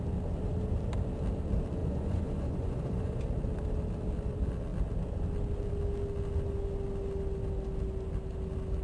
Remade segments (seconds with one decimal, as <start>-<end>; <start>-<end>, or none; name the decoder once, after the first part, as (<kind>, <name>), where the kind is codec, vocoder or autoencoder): 1.8-3.2 (vocoder, Vocos)